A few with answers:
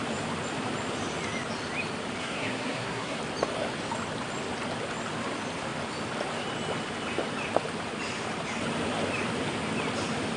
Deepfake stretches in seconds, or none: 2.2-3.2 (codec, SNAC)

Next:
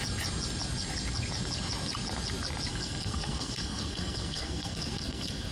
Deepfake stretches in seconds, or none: 2.7-5.5 (codec, SNAC)

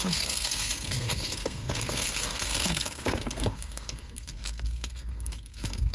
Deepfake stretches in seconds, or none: 0.0-5.9 (codec, SNAC)

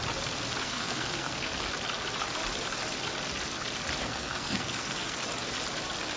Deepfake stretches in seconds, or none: 0.6-1.7 (codec, SNAC); 4.0-5.2

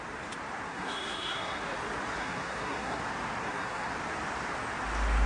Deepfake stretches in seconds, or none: 0.7-1.6 (codec, SNAC); 2.2-3.0; 3.4-3.9

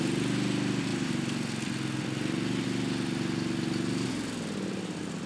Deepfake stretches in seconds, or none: none